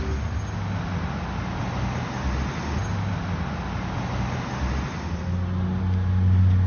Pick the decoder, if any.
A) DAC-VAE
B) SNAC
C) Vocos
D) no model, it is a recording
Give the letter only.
D